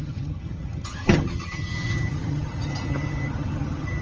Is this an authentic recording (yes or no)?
no